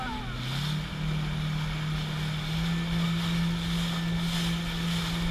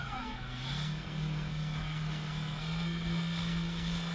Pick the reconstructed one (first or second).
second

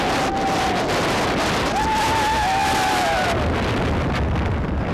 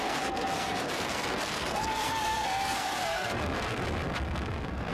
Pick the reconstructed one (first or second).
second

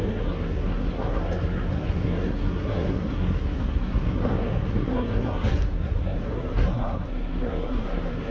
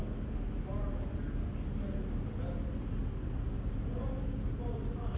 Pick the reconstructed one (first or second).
first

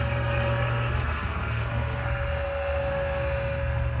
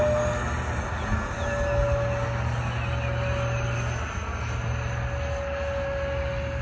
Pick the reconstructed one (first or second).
first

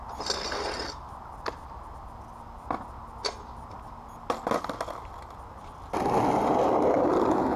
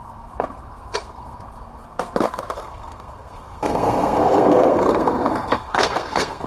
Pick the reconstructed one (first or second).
second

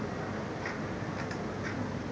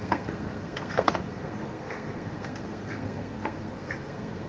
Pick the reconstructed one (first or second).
second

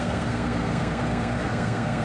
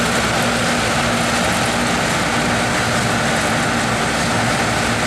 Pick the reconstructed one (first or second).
first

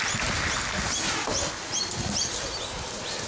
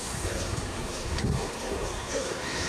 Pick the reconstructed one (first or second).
second